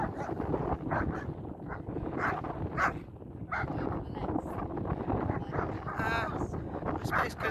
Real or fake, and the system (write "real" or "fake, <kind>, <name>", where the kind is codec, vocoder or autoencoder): real